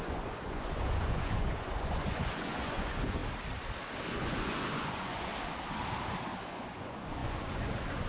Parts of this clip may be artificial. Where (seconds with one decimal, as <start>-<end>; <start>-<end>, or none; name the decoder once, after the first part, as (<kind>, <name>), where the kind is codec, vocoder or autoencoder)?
0.0-3.2 (vocoder, Vocos); 4.1-5.3; 6.5-8.1